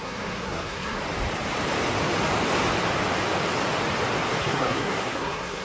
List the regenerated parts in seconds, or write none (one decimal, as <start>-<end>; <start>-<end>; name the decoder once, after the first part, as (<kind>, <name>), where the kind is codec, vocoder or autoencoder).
0.0-1.0 (codec, SNAC); 4.4-5.6